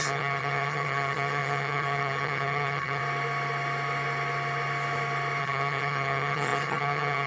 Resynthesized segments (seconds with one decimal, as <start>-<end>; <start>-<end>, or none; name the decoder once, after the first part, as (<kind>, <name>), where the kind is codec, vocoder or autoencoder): 0.0-3.0 (vocoder, HiFi-GAN); 5.4-7.3